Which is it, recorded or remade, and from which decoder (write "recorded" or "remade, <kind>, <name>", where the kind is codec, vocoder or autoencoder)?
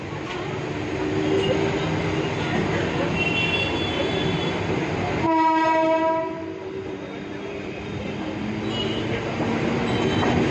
recorded